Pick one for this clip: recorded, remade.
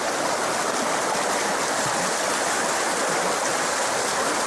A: recorded